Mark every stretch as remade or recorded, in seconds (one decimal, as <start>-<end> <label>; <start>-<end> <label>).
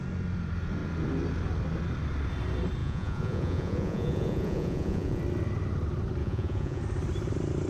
0.0-2.8 recorded; 2.8-5.2 remade; 5.2-6.2 recorded; 6.2-6.8 remade; 6.8-7.7 recorded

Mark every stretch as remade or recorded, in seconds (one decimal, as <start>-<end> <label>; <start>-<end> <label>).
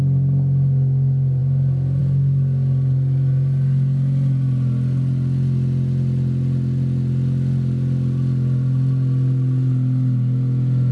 0.0-10.9 recorded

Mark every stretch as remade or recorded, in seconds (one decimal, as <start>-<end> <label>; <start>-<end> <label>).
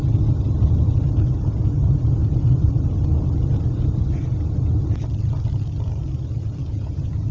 0.0-6.6 recorded; 6.6-7.3 remade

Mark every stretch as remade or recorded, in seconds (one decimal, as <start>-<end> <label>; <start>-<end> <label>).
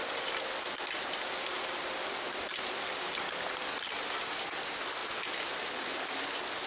0.0-6.7 recorded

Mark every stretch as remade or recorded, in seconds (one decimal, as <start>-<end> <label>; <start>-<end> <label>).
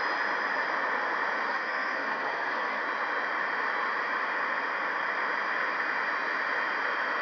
0.0-1.5 recorded; 1.5-2.8 remade; 2.8-7.2 recorded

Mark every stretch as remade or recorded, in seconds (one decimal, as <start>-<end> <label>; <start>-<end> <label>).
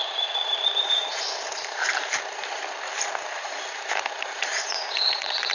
0.0-1.1 remade; 1.1-4.4 recorded; 4.4-5.5 remade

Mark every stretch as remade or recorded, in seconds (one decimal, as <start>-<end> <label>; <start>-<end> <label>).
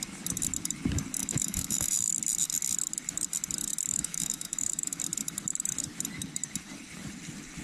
0.0-1.2 recorded; 1.2-2.1 remade; 2.1-3.9 recorded; 3.9-5.0 remade; 5.0-7.6 recorded